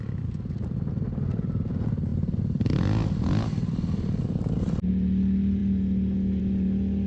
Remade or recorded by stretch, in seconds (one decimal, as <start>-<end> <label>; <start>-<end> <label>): 0.0-7.1 recorded